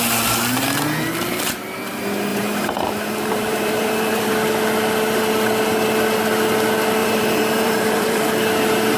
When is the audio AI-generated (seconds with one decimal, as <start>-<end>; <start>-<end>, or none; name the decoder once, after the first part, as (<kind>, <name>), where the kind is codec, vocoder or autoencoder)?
2.3-4.3 (vocoder, BigVGAN v2); 7.0-8.3